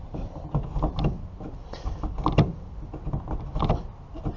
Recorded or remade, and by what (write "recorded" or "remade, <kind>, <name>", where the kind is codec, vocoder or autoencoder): recorded